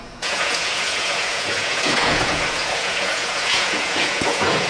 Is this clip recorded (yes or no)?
no